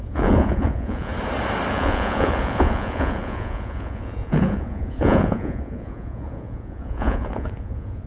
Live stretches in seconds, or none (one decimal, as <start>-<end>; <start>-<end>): 1.1-1.7